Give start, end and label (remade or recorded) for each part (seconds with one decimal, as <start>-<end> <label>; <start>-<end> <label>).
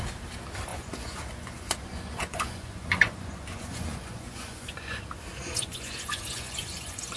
0.0-0.7 recorded; 0.7-5.0 remade; 5.0-5.4 recorded; 5.4-7.2 remade